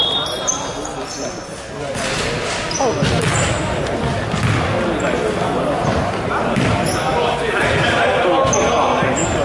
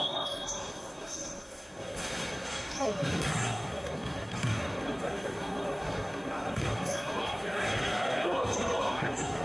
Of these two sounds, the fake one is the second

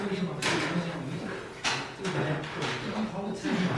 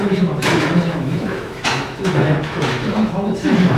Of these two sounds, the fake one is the second